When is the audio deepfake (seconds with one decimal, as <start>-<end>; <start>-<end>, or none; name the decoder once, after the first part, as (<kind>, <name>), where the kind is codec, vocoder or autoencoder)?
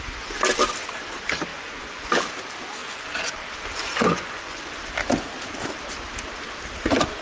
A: 1.5-2.1 (vocoder, Vocos); 2.8-3.3; 3.8-4.7